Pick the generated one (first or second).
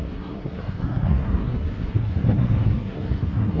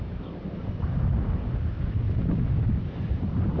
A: first